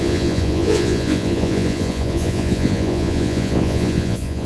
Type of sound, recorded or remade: remade